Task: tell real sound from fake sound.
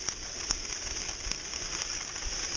real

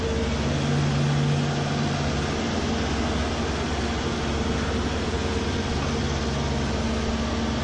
real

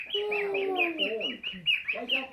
fake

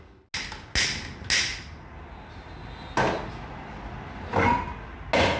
real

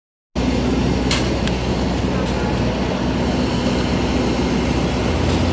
real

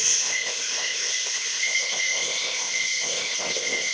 fake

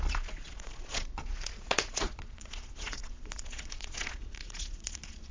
fake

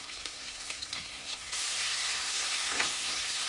fake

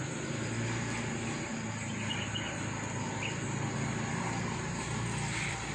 real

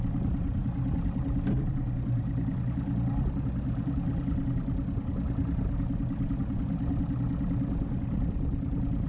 real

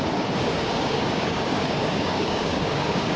fake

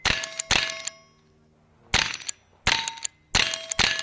real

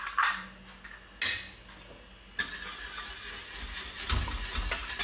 real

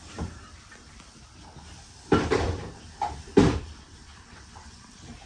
fake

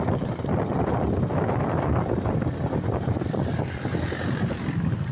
fake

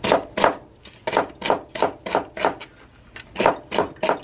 real